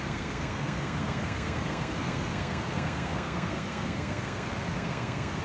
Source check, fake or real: fake